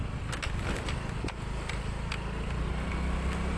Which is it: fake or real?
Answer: real